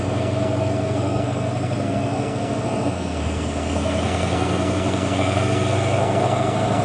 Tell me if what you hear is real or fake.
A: fake